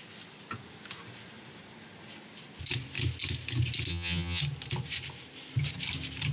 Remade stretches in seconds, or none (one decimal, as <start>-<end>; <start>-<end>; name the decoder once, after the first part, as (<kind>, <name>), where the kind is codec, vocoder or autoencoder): 3.9-4.4 (vocoder, HiFi-GAN)